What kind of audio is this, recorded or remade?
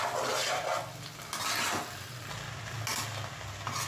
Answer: recorded